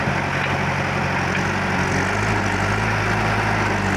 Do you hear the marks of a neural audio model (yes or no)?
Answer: no